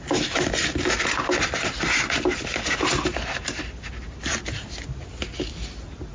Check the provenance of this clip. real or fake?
real